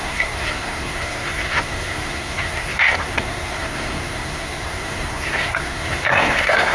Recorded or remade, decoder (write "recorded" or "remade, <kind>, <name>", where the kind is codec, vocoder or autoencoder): remade, codec, SNAC